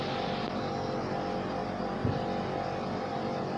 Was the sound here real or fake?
real